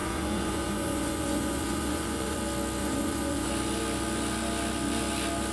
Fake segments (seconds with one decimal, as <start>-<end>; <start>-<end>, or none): 0.0-2.4; 2.8-3.5